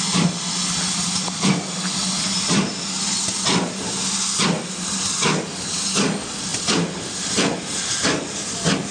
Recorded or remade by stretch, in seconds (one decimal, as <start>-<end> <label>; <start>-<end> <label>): 0.0-8.9 recorded

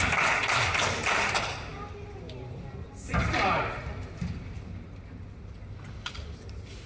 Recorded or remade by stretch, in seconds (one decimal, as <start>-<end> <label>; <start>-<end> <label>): 0.0-6.9 recorded

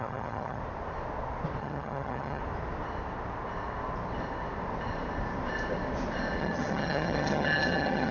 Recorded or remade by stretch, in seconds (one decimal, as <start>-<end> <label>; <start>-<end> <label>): 0.0-0.6 remade; 0.6-1.6 recorded; 1.6-2.4 remade; 2.4-6.4 recorded; 6.4-8.1 remade

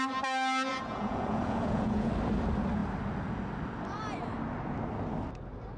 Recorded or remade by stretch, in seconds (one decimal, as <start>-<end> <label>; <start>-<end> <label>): 0.0-0.7 recorded; 0.7-2.1 remade; 2.1-5.8 recorded

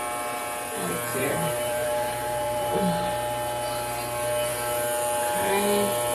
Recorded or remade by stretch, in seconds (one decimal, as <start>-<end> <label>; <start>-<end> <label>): 0.0-1.1 recorded; 1.1-2.7 remade; 2.7-6.1 recorded